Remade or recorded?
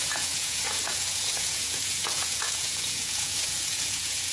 remade